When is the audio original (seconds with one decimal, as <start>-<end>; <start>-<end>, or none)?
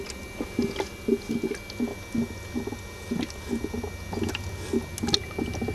0.0-5.7